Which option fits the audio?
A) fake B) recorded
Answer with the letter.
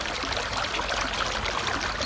B